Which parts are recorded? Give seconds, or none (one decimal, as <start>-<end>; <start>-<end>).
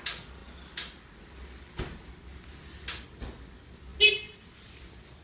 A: 0.0-5.2